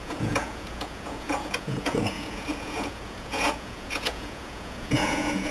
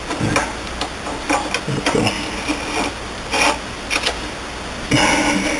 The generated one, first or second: first